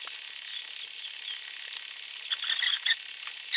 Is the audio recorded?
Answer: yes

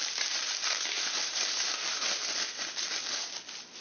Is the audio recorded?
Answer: yes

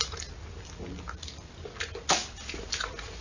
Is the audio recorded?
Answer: yes